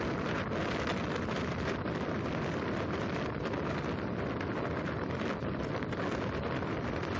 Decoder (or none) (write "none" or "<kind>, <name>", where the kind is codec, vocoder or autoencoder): none